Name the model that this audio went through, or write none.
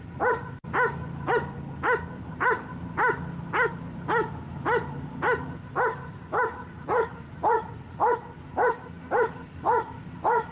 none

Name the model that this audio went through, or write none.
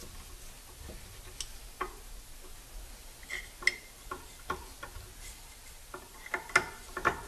none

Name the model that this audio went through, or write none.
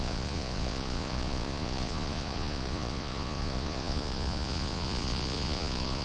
vocoder, Vocos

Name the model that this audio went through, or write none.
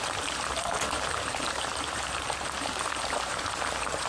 vocoder, BigVGAN v2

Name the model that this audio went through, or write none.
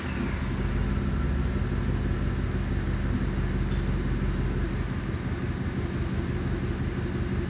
none